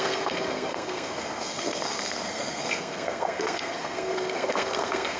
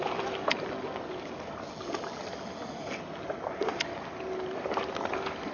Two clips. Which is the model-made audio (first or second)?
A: first